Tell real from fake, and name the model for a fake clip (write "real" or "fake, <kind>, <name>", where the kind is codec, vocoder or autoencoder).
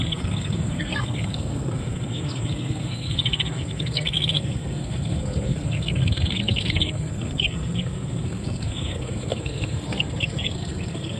fake, codec, SNAC